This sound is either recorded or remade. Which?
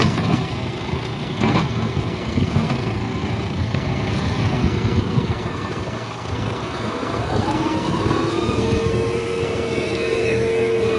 remade